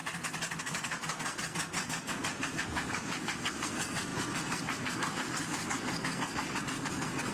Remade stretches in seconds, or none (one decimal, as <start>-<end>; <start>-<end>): 0.6-7.3